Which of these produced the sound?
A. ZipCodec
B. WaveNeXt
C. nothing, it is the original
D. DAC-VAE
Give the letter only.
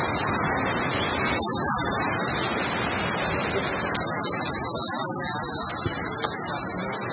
C